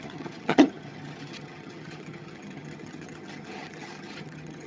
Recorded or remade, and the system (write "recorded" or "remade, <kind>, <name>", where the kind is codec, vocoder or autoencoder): remade, vocoder, HiFi-GAN